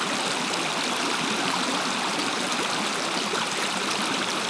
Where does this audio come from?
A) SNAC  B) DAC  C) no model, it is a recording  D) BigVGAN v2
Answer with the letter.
C